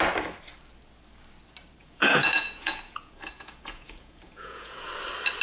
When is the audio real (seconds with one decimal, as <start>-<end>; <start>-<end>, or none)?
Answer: 0.0-1.8; 4.9-5.4